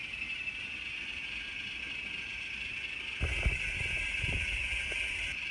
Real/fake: real